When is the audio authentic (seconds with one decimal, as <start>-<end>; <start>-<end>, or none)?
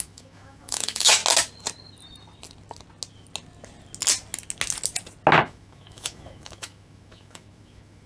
1.2-5.4